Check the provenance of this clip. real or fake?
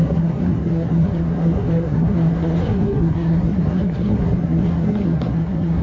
fake